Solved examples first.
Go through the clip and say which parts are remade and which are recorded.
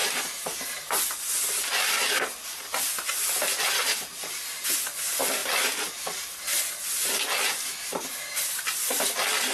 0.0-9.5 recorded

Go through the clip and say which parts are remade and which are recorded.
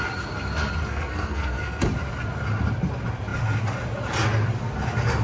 0.0-0.9 recorded; 0.9-1.8 remade; 1.8-5.2 recorded